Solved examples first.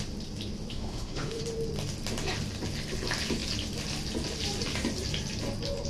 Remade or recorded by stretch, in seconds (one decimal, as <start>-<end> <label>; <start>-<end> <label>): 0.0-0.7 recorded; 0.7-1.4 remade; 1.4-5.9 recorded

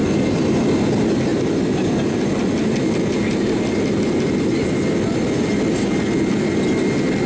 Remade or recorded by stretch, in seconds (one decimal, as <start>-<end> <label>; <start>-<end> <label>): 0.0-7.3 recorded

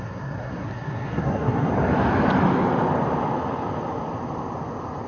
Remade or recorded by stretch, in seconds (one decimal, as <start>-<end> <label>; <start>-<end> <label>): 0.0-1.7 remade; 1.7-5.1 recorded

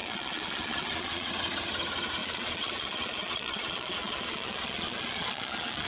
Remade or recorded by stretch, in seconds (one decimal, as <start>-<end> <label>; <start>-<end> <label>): 0.0-1.3 remade; 1.3-2.2 recorded; 2.2-5.9 remade

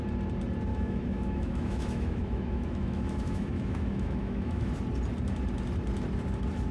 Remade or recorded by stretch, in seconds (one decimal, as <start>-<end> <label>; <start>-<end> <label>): 0.0-0.7 recorded; 0.7-4.7 remade; 4.7-6.7 recorded

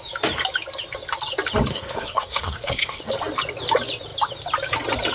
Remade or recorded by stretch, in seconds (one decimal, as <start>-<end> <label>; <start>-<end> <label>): 0.0-1.7 recorded; 1.7-3.0 remade; 3.0-5.1 recorded

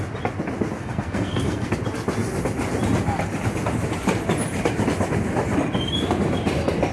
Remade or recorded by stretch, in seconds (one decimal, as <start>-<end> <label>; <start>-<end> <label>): 0.0-0.8 recorded; 0.8-1.7 remade; 1.7-6.9 recorded